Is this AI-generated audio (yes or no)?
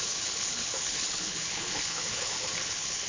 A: yes